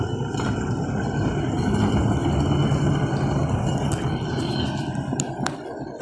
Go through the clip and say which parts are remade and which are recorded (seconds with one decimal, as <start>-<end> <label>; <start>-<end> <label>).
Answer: 0.0-6.0 recorded